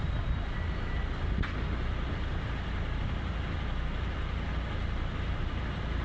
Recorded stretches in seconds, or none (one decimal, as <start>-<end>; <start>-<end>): 0.0-6.0